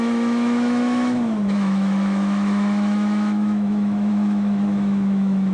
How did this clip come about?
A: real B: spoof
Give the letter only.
B